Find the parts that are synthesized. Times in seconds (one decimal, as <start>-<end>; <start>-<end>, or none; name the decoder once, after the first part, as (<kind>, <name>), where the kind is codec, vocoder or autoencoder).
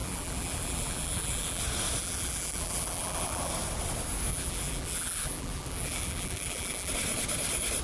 0.0-1.6 (vocoder, BigVGAN v2); 2.0-3.5; 4.3-6.9